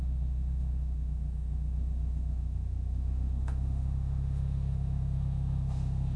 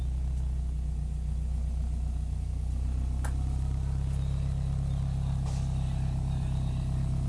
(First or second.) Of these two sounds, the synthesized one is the first